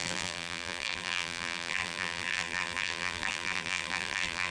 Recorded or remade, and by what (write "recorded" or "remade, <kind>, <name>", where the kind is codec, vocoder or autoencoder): remade, vocoder, BigVGAN v2